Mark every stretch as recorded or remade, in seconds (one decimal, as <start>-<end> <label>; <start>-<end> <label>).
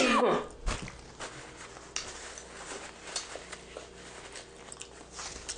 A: 0.0-5.6 recorded